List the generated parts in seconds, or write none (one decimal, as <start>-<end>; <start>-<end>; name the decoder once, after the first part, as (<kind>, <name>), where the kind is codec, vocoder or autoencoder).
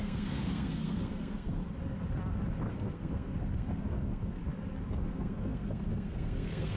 0.0-1.6 (codec, SNAC); 2.7-4.4; 5.0-6.8